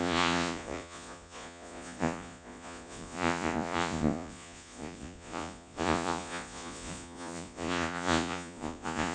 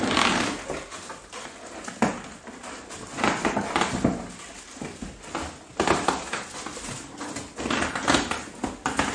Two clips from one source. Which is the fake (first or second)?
first